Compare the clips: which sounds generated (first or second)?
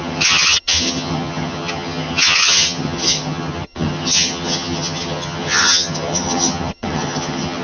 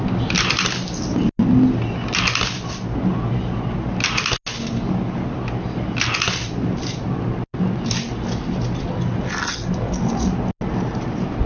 first